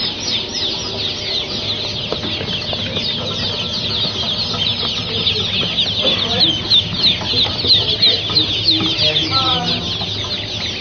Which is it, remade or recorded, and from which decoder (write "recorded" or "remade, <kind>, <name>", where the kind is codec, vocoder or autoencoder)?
recorded